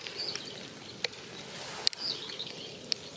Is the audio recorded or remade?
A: recorded